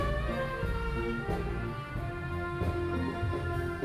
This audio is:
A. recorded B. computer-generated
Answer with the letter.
A